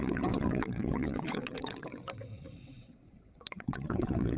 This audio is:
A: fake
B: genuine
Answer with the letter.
A